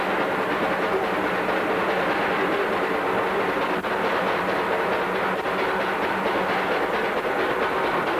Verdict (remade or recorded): recorded